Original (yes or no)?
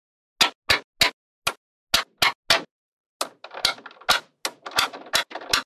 yes